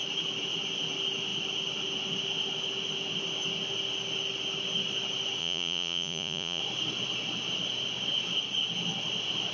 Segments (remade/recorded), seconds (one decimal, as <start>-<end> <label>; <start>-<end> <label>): 0.0-5.4 recorded; 5.4-6.6 remade; 6.6-9.5 recorded